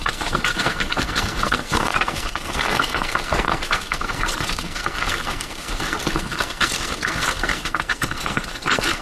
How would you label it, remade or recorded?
remade